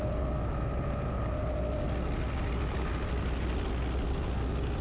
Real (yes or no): yes